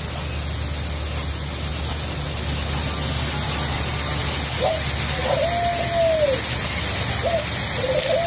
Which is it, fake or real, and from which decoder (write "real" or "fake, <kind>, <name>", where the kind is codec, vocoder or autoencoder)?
real